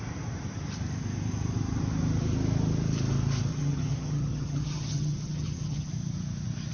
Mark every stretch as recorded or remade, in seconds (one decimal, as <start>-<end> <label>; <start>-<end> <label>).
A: 0.0-3.5 recorded; 3.5-5.9 remade; 5.9-6.7 recorded